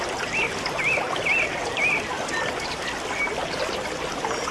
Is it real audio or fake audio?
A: real